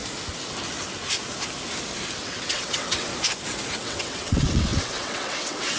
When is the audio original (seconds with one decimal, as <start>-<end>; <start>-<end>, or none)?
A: 0.0-2.2; 3.1-3.8